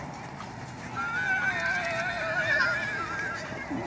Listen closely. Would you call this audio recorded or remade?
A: recorded